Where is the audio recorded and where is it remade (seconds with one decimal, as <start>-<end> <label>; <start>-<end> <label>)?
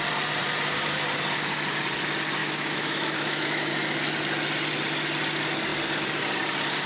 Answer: 0.0-2.4 recorded; 2.4-3.7 remade; 3.7-6.9 recorded